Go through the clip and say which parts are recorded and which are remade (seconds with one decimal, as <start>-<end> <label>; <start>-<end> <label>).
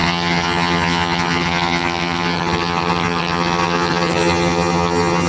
0.0-5.3 remade